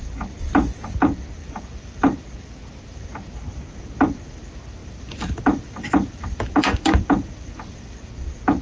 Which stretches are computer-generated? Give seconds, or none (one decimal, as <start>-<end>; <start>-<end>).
1.4-3.0; 4.8-8.1

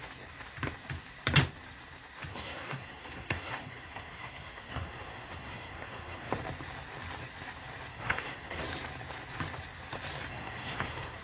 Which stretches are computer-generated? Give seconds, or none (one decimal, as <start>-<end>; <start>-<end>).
2.3-6.3; 7.9-8.6; 10.3-11.2

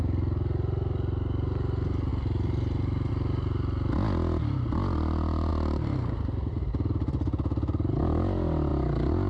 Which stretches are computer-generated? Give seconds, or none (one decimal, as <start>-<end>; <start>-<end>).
none

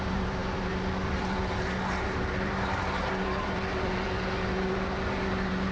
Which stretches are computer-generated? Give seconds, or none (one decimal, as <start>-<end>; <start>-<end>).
0.0-5.7

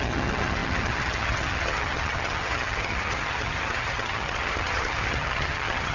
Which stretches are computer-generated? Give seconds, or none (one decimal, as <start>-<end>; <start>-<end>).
0.0-5.9

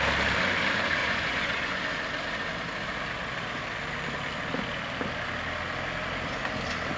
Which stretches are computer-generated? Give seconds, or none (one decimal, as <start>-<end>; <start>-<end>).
1.0-1.8

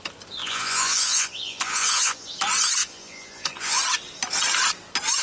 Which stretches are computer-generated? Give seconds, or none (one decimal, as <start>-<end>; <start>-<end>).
0.4-2.3; 2.8-3.8